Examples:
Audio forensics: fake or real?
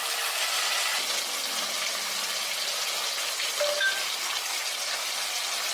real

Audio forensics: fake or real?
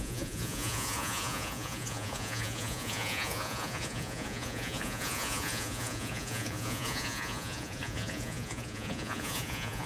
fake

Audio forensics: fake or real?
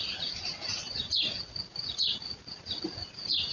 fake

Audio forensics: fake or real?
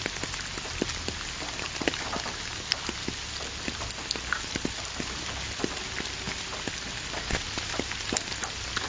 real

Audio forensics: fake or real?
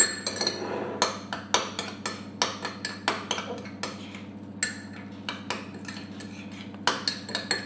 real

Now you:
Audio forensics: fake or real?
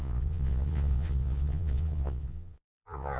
fake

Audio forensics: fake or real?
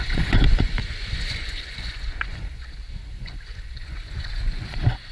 fake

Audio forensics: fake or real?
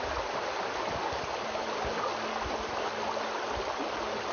real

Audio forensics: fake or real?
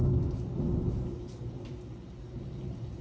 real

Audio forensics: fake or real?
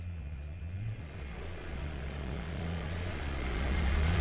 fake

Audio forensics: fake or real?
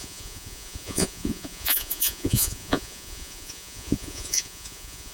fake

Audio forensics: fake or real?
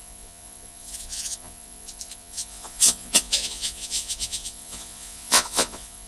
fake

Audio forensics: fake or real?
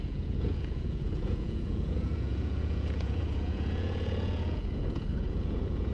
fake